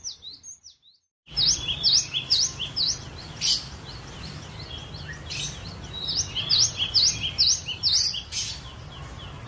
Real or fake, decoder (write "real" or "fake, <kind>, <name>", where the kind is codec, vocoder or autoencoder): real